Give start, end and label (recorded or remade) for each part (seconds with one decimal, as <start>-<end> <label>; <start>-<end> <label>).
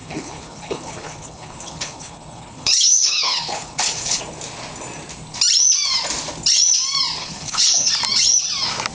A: 0.0-4.2 remade; 4.2-7.2 recorded; 7.2-7.9 remade; 7.9-8.9 recorded